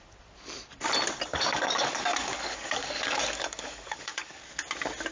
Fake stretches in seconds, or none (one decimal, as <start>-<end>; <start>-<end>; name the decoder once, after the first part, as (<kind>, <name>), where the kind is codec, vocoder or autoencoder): 1.3-4.4 (codec, DAC)